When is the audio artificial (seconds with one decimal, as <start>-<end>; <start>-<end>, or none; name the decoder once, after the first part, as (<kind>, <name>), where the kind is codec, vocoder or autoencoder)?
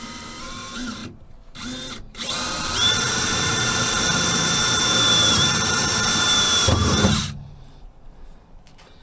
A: 0.0-1.0 (vocoder, BigVGAN v2); 2.1-9.0